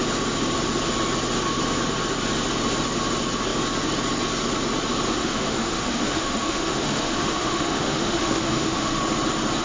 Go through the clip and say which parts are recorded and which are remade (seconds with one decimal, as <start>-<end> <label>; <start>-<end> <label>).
0.0-5.2 recorded; 5.2-9.0 remade; 9.0-9.6 recorded